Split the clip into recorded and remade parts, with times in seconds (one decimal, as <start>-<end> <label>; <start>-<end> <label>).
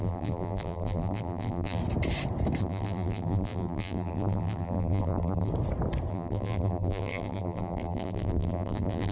0.0-1.8 remade; 1.8-2.6 recorded; 2.6-5.5 remade; 5.5-6.1 recorded; 6.1-9.1 remade